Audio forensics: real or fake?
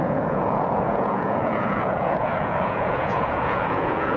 fake